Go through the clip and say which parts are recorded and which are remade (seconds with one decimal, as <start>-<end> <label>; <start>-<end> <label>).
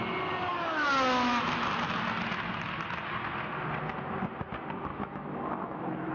0.0-4.9 recorded; 4.9-6.1 remade